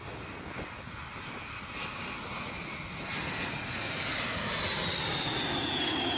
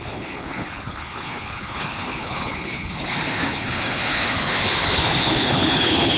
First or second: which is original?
first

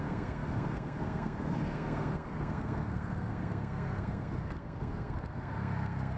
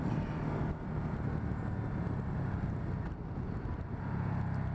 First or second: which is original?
second